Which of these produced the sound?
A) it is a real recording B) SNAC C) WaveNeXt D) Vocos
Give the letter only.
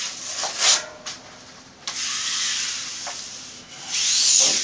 A